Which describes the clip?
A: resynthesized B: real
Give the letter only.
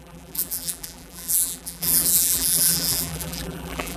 A